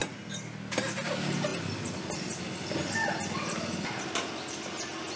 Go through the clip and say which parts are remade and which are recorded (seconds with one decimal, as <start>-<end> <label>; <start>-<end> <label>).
0.0-5.2 recorded